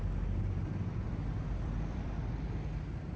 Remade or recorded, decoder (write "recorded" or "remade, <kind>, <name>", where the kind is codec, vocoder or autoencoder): remade, vocoder, BigVGAN v2